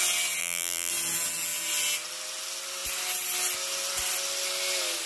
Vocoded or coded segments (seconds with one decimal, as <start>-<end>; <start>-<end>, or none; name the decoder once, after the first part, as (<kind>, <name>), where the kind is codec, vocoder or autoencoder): 0.4-0.9 (vocoder, BigVGAN v2)